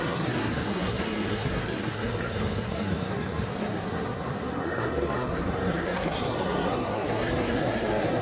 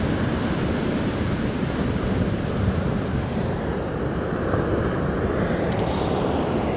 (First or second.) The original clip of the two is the second